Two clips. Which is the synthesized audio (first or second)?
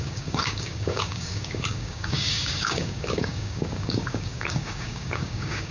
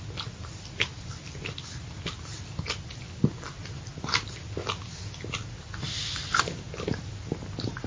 first